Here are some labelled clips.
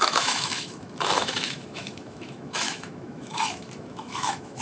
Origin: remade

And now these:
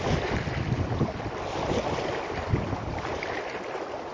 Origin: recorded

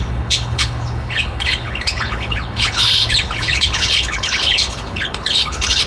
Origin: remade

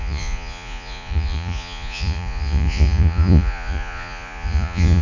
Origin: remade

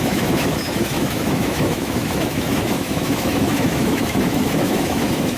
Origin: remade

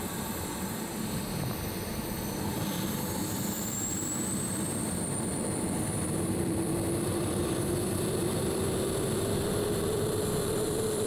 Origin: remade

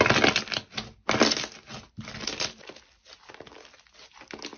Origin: recorded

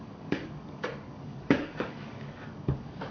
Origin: remade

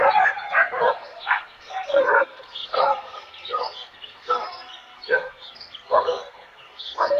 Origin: remade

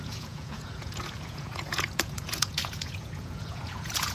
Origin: remade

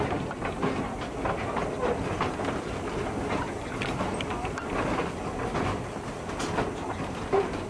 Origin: recorded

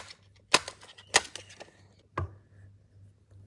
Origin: recorded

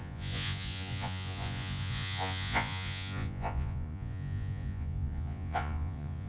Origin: remade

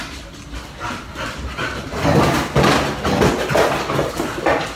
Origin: recorded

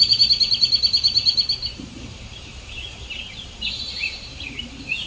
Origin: remade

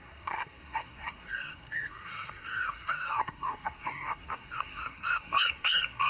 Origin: remade